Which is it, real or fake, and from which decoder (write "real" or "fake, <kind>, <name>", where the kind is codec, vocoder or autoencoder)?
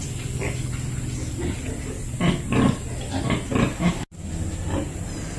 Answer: real